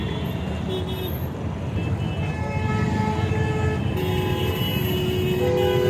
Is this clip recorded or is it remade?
recorded